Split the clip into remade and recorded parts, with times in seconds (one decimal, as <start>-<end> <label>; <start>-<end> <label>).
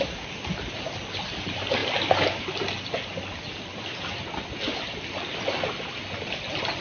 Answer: 0.0-6.8 recorded